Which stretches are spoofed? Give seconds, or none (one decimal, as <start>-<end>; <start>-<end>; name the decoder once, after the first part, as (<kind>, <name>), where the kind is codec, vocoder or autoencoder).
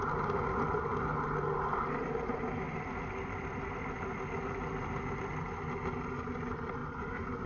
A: none